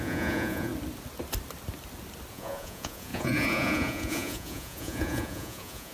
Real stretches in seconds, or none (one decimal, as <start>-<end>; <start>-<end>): 0.7-2.3